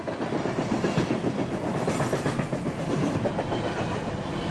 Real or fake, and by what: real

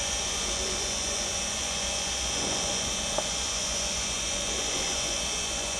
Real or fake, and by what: fake, vocoder, Vocos